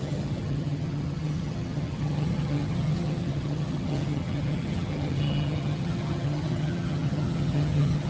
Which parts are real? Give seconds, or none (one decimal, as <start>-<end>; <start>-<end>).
none